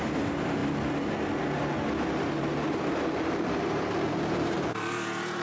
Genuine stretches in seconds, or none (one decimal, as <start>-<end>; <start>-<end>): 0.6-2.4